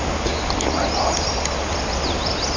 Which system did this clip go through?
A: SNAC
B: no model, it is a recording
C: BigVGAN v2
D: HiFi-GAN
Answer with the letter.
B